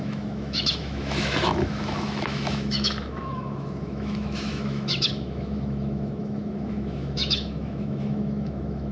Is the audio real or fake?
fake